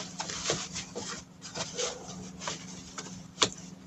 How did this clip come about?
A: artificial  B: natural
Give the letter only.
A